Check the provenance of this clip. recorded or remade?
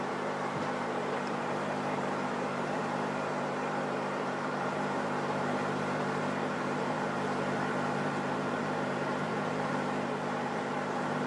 remade